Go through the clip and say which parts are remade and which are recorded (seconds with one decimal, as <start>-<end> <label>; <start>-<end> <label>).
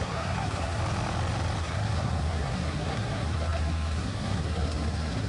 0.0-0.8 remade; 0.8-1.6 recorded; 1.6-5.3 remade